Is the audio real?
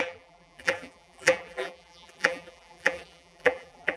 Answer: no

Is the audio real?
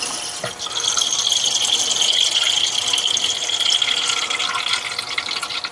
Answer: yes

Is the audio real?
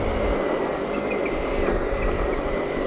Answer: yes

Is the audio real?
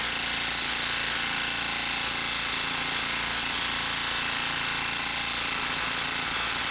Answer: yes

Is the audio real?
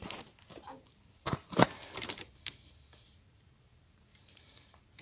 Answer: no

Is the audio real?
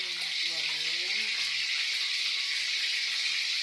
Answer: yes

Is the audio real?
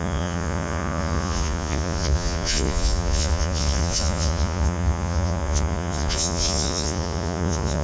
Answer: no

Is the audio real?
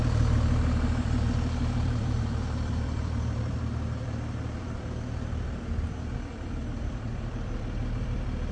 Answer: no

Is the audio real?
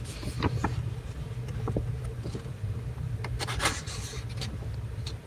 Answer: no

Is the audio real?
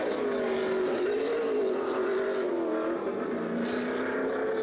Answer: yes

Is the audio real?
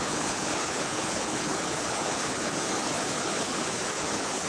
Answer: no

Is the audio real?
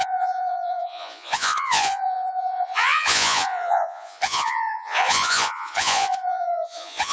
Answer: no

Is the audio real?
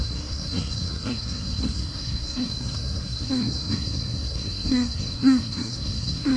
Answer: no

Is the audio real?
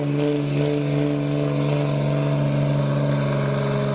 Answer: yes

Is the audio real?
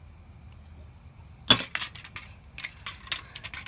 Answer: yes